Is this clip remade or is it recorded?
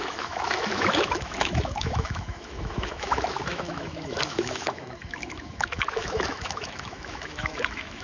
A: remade